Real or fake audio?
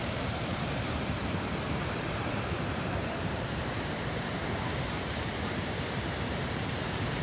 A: fake